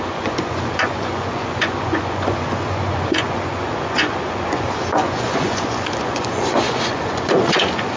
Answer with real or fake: fake